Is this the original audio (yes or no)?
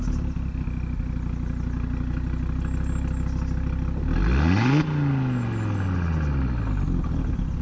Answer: yes